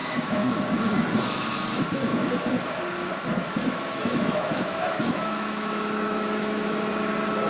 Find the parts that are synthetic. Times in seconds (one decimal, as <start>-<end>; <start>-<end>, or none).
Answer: 0.0-0.6; 2.1-2.8; 3.3-6.9